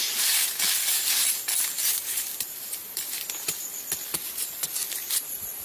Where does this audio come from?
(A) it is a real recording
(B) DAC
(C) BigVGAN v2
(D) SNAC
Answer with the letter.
C